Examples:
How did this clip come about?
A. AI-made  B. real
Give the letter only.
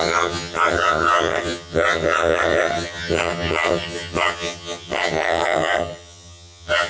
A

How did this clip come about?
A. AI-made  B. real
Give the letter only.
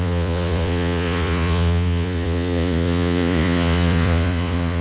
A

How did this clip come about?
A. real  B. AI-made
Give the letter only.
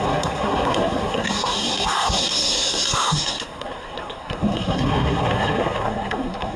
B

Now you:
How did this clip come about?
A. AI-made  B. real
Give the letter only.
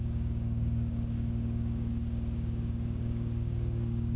A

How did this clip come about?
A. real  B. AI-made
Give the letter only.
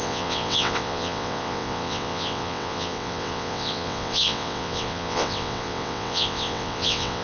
B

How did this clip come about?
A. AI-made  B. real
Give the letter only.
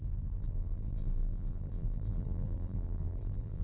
A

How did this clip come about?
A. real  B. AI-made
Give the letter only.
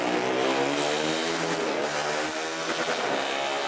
A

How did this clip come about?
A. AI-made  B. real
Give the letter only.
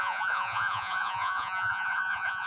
A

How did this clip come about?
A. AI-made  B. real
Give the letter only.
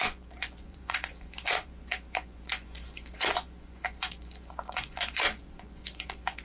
A